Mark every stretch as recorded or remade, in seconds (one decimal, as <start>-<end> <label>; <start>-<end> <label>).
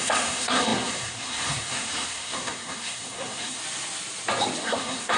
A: 0.0-3.6 remade; 3.6-4.6 recorded; 4.6-5.2 remade